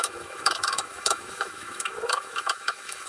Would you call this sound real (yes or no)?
no